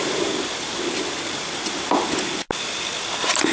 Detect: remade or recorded recorded